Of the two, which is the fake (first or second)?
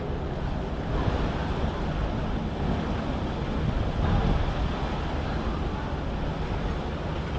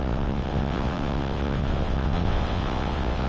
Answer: second